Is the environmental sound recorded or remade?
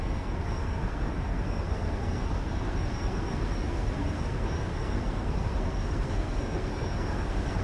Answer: remade